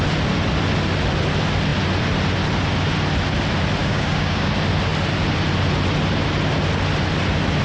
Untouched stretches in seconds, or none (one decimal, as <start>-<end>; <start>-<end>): 0.0-3.8; 4.5-7.6